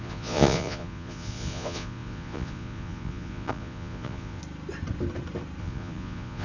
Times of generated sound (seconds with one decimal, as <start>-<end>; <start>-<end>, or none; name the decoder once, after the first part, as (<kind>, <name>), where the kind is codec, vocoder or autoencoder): 0.0-4.4 (vocoder, Vocos); 5.6-6.4